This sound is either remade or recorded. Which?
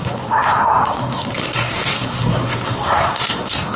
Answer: remade